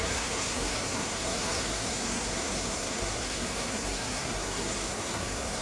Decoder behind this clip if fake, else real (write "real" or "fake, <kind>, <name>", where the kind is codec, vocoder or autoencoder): fake, codec, SNAC